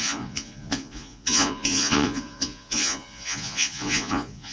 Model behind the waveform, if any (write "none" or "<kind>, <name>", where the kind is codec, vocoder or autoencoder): vocoder, Vocos